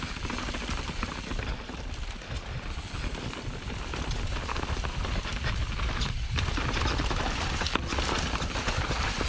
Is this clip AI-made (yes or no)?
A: no